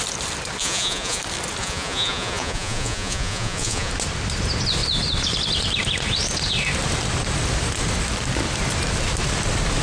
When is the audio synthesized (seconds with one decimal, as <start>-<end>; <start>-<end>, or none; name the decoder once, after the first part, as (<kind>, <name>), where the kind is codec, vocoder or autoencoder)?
0.6-1.2 (vocoder, Vocos); 1.6-3.9